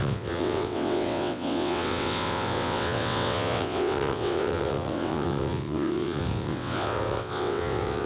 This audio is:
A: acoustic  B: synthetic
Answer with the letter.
B